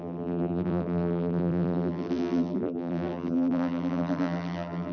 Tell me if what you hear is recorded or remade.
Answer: remade